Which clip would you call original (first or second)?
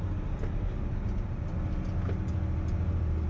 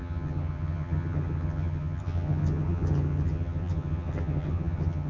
first